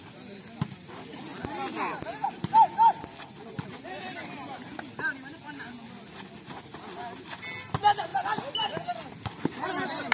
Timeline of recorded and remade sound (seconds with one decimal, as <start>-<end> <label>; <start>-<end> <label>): 0.0-10.1 recorded